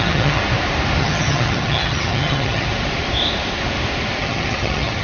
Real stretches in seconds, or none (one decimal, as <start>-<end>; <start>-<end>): 0.4-1.0; 2.7-4.2